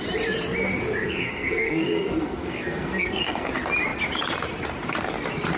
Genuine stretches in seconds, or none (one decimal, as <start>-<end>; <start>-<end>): 0.0-1.0; 3.5-5.6